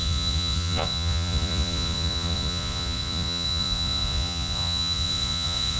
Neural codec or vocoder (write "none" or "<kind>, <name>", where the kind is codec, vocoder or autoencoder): vocoder, Vocos